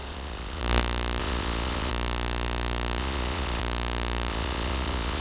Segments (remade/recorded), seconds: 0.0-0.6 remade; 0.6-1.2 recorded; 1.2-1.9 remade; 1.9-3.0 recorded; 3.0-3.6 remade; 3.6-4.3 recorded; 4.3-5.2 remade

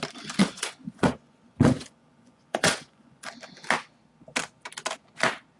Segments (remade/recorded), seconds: 0.0-0.4 recorded; 0.4-3.3 remade; 3.3-5.6 recorded

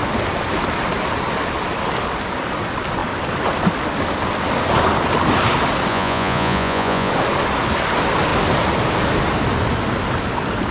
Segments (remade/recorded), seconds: 0.0-5.9 recorded; 5.9-7.1 remade; 7.1-10.7 recorded

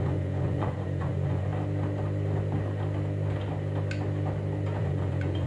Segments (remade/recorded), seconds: 0.0-1.5 remade; 1.5-4.8 recorded; 4.8-5.5 remade

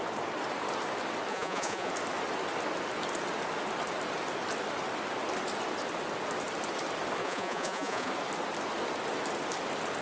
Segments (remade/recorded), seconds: 0.0-1.3 recorded; 1.3-1.9 remade; 1.9-7.2 recorded; 7.2-8.1 remade; 8.1-10.0 recorded

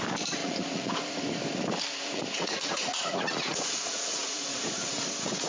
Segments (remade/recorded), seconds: 0.0-0.4 recorded; 0.4-1.2 remade; 1.2-1.9 recorded; 1.9-5.5 remade

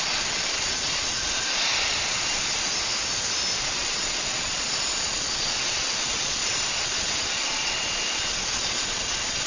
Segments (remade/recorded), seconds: 0.0-2.7 remade; 2.7-3.6 recorded; 3.6-9.5 remade